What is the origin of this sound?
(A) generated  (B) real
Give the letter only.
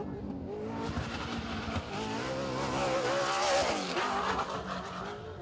B